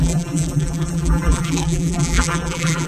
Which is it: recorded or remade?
remade